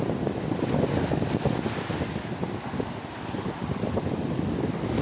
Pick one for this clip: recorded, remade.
recorded